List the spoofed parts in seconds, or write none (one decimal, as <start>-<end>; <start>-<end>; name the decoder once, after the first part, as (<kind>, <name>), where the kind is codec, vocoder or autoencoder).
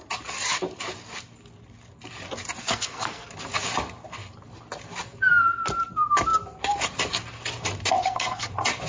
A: 2.6-3.3 (codec, SNAC); 8.0-8.5